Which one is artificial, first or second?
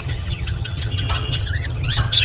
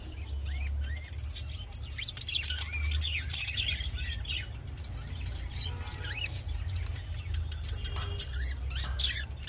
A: first